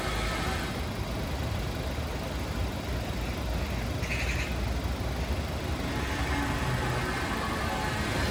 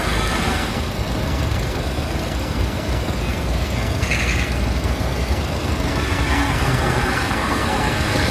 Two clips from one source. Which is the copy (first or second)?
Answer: second